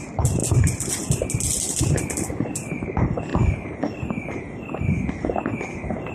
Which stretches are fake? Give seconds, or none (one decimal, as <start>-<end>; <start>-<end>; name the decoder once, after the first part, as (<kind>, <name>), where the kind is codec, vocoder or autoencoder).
none